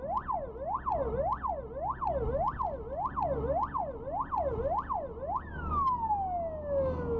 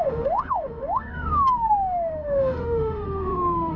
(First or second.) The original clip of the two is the first